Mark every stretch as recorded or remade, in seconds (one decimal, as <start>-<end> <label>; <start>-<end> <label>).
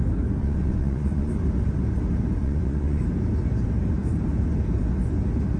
0.0-0.4 recorded; 0.4-1.3 remade; 1.3-2.4 recorded; 2.4-3.0 remade; 3.0-5.6 recorded